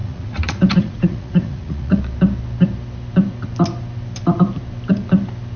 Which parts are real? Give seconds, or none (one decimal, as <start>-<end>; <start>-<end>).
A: 2.0-5.6

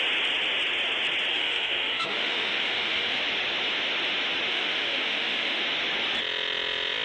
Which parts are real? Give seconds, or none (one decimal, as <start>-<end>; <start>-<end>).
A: 0.0-1.3; 3.2-4.5; 5.6-7.0